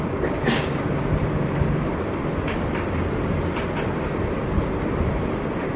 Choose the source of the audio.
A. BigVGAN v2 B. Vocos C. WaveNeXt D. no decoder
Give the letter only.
D